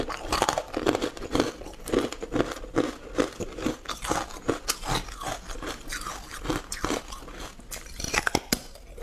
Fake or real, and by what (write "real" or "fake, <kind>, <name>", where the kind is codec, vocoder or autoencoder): real